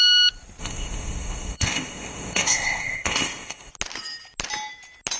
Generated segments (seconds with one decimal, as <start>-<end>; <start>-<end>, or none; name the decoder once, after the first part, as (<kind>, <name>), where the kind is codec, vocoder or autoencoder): 0.6-3.7 (codec, ZipCodec)